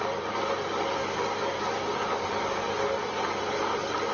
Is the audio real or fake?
real